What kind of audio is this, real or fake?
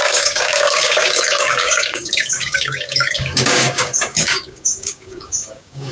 fake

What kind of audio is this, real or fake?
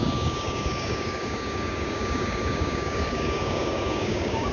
fake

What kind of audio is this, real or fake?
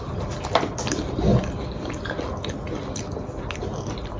real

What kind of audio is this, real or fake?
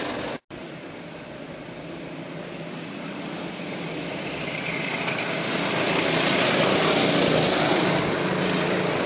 real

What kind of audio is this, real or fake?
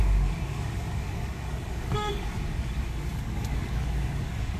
fake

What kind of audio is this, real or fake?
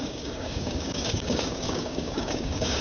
fake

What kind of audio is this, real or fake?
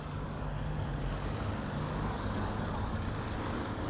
fake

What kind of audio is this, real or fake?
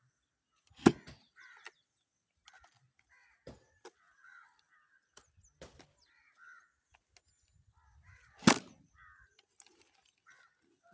real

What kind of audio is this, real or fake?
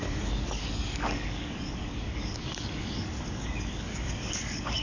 fake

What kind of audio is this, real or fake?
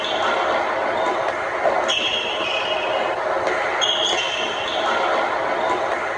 real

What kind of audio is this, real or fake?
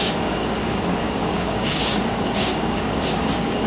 fake